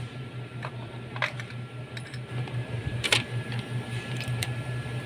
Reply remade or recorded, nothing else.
remade